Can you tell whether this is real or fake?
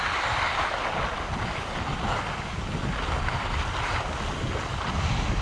real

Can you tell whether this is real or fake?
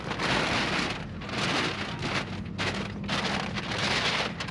real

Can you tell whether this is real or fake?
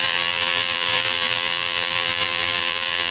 fake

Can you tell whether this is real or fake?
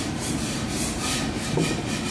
fake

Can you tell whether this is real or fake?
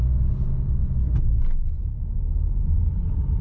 real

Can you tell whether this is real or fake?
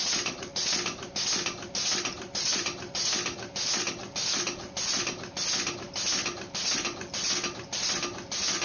real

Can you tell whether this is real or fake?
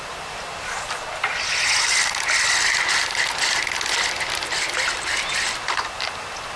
real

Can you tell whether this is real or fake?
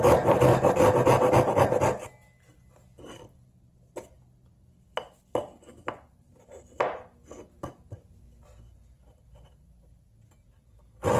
real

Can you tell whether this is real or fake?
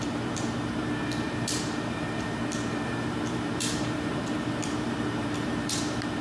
fake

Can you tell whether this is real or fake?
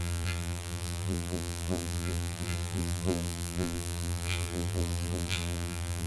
fake